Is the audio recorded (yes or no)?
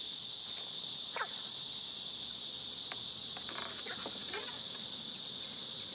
yes